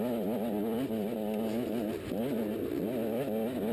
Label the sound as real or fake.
real